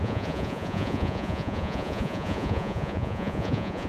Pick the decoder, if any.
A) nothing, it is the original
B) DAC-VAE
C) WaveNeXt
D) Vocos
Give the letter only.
D